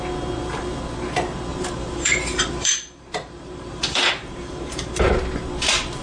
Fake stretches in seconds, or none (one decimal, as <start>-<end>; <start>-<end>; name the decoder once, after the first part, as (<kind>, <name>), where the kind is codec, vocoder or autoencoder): 1.5-5.1 (vocoder, BigVGAN v2)